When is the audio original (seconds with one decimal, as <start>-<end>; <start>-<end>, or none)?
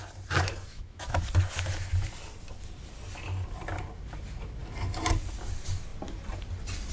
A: 0.0-0.7; 1.2-6.9